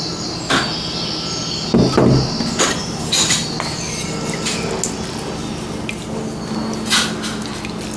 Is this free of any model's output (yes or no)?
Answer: yes